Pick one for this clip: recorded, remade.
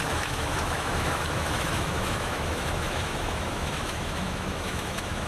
remade